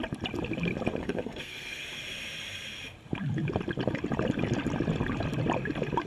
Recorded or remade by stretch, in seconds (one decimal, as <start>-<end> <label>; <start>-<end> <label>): 0.0-1.0 recorded; 1.0-1.8 remade; 1.8-6.1 recorded